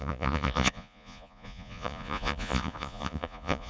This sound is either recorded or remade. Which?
remade